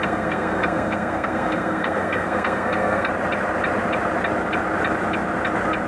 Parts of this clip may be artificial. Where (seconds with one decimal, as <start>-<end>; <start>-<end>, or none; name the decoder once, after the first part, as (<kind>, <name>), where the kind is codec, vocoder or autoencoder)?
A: 0.0-3.1 (codec, SNAC)